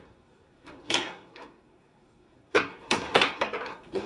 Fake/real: fake